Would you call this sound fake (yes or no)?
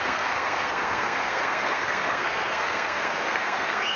yes